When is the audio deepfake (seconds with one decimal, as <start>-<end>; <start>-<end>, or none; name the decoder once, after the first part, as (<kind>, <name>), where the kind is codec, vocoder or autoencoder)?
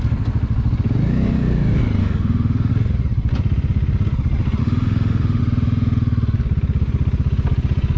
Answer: 2.0-2.7 (autoencoder, DAC-VAE); 4.6-5.4